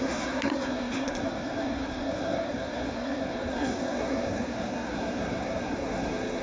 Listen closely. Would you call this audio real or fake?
fake